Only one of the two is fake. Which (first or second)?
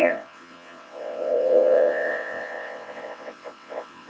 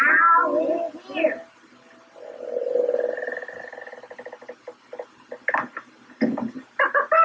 first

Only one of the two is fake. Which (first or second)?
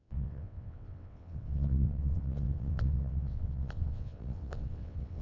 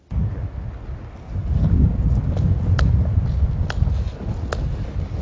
first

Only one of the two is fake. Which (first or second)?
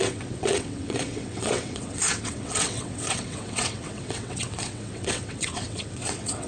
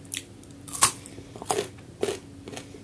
first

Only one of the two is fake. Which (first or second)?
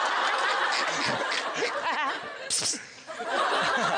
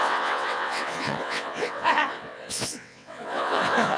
second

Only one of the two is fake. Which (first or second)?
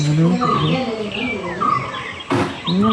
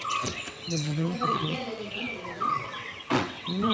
second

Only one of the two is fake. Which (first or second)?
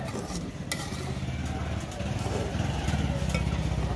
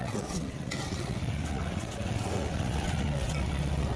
second